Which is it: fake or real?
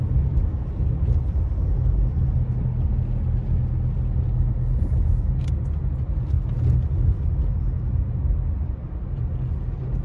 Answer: real